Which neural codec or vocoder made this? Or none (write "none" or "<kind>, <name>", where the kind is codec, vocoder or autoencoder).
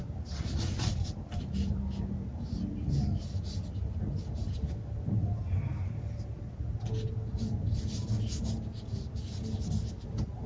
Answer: none